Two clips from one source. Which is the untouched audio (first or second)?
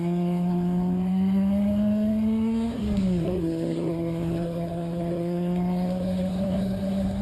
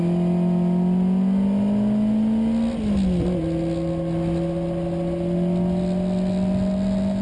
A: second